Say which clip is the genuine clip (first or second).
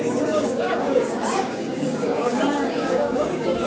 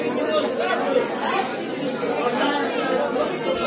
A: second